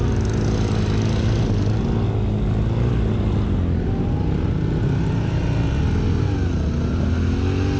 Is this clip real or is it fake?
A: real